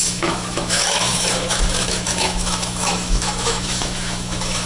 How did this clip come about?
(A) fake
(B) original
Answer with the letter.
A